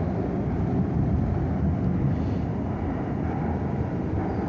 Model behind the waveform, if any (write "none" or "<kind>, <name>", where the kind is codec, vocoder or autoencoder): none